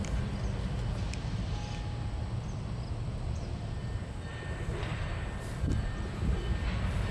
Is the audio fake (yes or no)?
no